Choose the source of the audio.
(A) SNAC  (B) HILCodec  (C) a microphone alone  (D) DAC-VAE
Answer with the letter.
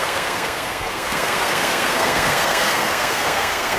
A